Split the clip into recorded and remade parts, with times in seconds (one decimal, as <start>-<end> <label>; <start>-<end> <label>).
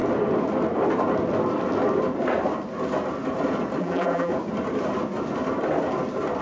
0.0-3.8 recorded; 3.8-4.3 remade; 4.3-6.4 recorded